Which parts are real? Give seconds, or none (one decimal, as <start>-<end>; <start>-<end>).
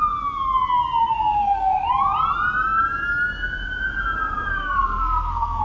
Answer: 0.0-1.0; 1.9-4.5